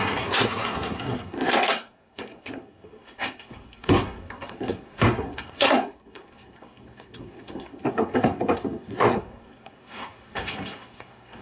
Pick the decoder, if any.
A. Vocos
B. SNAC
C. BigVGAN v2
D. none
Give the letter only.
B